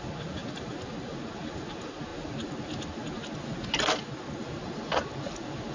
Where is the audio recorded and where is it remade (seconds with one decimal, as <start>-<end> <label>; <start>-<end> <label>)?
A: 0.0-5.7 recorded